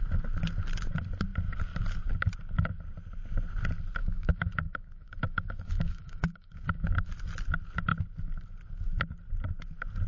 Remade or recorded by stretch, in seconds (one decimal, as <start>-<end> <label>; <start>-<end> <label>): 0.0-4.0 recorded; 4.0-7.1 remade; 7.1-10.1 recorded